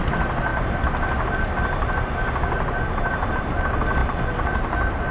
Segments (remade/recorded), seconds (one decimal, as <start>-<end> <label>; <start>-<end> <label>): 0.0-5.1 recorded

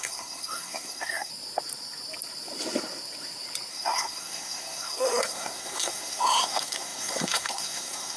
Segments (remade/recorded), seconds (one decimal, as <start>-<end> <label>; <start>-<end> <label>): 0.0-1.3 remade; 1.3-3.7 recorded; 3.7-8.2 remade

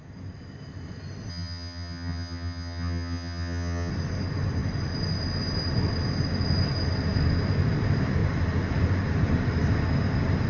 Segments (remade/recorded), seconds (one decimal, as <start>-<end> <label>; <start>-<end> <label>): 0.0-1.3 recorded; 1.3-3.9 remade; 3.9-10.5 recorded

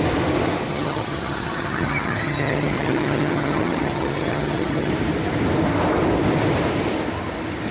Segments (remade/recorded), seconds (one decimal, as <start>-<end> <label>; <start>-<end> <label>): 0.0-0.7 recorded; 0.7-4.9 remade; 4.9-7.7 recorded

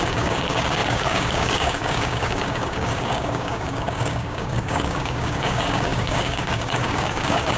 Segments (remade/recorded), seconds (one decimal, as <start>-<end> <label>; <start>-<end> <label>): 0.0-7.6 remade

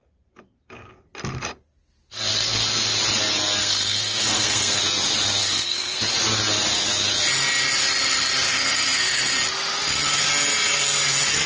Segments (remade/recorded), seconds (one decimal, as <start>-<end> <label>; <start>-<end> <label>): 0.0-3.6 recorded; 3.6-4.8 remade; 4.8-5.4 recorded; 5.4-6.0 remade; 6.0-8.5 recorded; 8.5-9.3 remade; 9.3-11.5 recorded

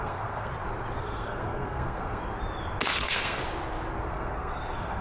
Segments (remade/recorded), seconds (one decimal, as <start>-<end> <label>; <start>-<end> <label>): 0.0-0.5 remade; 0.5-1.0 recorded; 1.0-2.2 remade; 2.2-2.9 recorded; 2.9-3.4 remade; 3.4-4.1 recorded; 4.1-5.0 remade

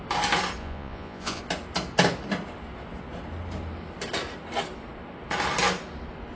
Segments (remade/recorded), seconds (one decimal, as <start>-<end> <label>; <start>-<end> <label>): 0.0-0.6 recorded; 0.6-1.4 remade; 1.4-6.4 recorded